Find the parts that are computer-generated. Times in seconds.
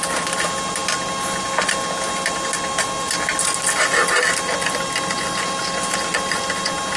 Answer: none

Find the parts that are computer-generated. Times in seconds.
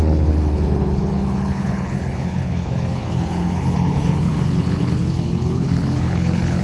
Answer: 0.0-6.6 (codec, HILCodec)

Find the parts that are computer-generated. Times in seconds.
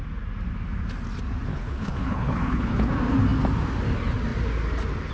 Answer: 1.5-2.9 (codec, HILCodec)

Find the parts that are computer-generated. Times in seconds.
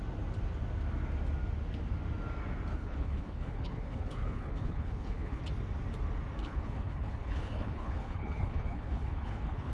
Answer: 2.7-5.4 (codec, HILCodec); 6.4-9.7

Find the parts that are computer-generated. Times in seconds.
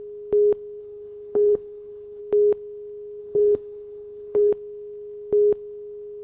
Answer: 0.8-2.2 (codec, HILCodec); 3.2-4.5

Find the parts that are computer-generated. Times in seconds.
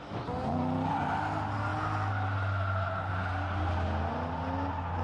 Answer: none